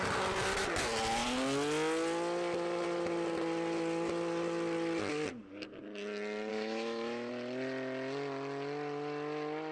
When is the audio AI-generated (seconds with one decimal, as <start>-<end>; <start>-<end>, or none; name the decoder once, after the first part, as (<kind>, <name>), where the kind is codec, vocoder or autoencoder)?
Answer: 6.5-7.3 (autoencoder, DAC-VAE)